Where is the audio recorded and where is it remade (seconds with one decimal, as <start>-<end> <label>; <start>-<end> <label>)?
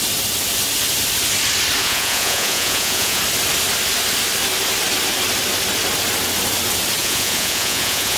0.0-1.8 recorded; 1.8-3.2 remade; 3.2-7.0 recorded; 7.0-8.2 remade